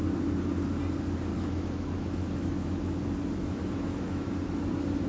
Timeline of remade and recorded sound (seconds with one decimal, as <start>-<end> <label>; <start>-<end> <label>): 0.0-1.3 recorded; 1.3-3.0 remade; 3.0-3.6 recorded; 3.6-4.3 remade; 4.3-5.1 recorded